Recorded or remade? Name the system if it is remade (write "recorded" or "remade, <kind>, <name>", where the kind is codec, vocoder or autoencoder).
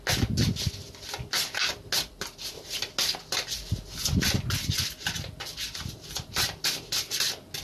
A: recorded